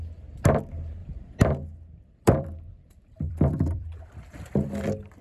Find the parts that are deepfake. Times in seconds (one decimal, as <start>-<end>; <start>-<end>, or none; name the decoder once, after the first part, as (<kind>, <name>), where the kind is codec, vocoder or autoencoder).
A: 1.0-4.1 (vocoder, BigVGAN v2)